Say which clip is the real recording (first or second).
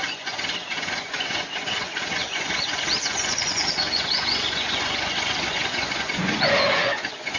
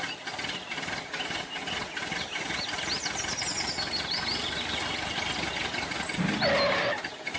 second